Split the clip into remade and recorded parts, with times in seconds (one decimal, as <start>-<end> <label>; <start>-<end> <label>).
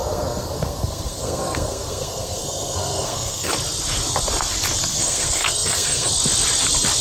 0.0-3.5 remade; 3.5-4.9 recorded; 4.9-6.1 remade; 6.1-7.0 recorded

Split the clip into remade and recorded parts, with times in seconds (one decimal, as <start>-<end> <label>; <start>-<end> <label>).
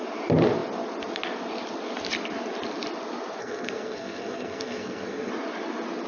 0.0-3.4 recorded; 3.4-5.3 remade; 5.3-6.1 recorded